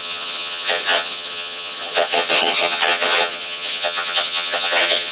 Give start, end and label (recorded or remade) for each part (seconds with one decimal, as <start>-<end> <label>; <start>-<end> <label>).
0.0-5.1 remade